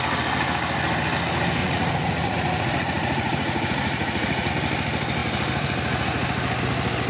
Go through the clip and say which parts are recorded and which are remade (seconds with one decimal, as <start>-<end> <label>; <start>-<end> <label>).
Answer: 0.0-1.6 recorded; 1.6-4.5 remade; 4.5-7.1 recorded